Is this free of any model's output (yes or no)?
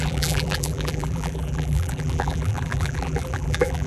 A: no